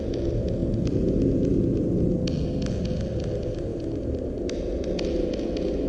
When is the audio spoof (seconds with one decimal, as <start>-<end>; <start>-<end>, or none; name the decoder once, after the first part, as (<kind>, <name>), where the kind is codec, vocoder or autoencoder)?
3.7-4.9 (vocoder, BigVGAN v2)